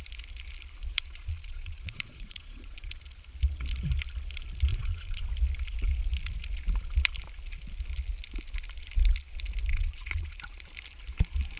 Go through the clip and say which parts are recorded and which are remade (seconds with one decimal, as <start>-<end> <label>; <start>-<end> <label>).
0.0-0.8 recorded; 0.8-3.0 remade; 3.0-4.7 recorded; 4.7-5.2 remade; 5.2-9.7 recorded; 9.7-10.4 remade; 10.4-11.6 recorded